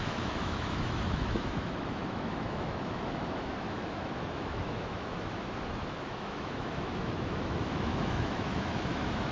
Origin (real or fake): fake